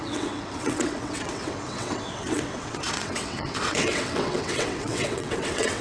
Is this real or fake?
fake